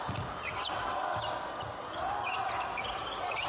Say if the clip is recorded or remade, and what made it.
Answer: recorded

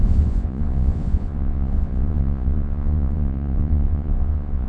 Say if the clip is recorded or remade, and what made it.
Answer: remade, vocoder, Vocos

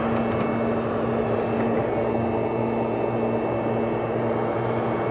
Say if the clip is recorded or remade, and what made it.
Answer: recorded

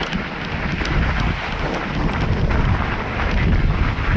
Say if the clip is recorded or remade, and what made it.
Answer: recorded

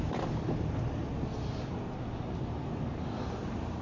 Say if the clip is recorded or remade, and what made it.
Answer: recorded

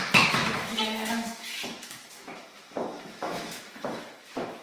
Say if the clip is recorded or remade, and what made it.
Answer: remade, autoencoder, DAC-VAE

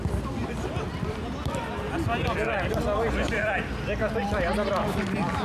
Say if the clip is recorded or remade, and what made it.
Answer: recorded